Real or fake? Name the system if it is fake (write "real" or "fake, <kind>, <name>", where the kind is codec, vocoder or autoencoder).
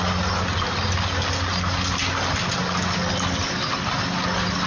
real